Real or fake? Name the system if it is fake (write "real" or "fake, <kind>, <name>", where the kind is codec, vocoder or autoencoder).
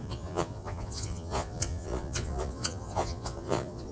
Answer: fake, vocoder, Vocos